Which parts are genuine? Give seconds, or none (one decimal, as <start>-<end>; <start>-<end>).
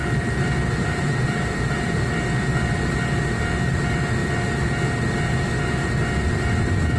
2.1-7.0